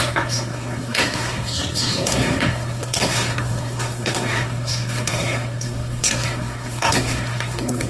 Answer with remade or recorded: remade